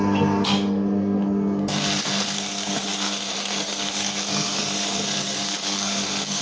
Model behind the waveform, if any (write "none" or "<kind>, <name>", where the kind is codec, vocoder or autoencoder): codec, SNAC